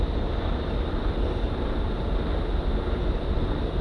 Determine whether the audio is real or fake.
real